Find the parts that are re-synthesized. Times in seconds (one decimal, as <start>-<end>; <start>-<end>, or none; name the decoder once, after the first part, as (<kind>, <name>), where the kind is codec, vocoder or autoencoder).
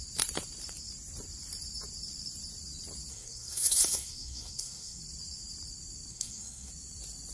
3.1-5.0 (codec, SNAC); 6.1-6.7